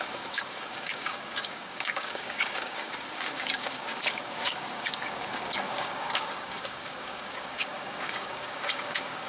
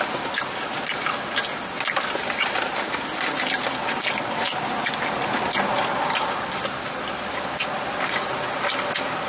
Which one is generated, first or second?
first